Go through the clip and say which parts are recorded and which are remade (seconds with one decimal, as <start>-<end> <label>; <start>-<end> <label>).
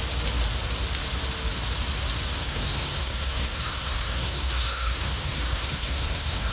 0.0-2.4 recorded; 2.4-6.5 remade